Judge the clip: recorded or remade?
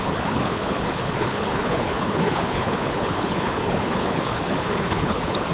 remade